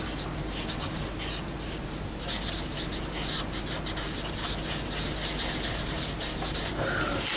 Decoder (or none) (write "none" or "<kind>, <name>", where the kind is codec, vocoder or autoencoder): none